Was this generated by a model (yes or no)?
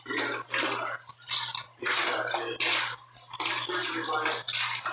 no